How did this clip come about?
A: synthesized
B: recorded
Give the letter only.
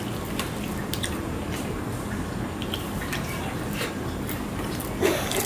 B